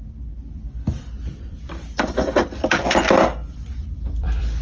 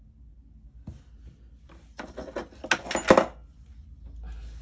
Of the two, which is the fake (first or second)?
first